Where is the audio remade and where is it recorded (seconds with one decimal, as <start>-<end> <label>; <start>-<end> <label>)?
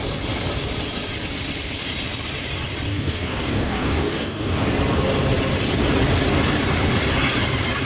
0.0-2.9 recorded; 2.9-4.6 remade; 4.6-7.8 recorded